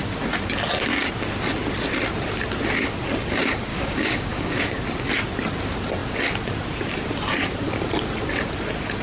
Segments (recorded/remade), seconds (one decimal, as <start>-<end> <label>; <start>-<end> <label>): 0.0-3.7 recorded; 3.7-4.6 remade; 4.6-9.0 recorded